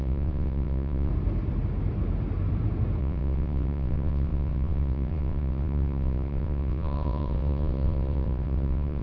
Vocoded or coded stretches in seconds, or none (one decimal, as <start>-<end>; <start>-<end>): 0.0-1.1; 3.0-9.0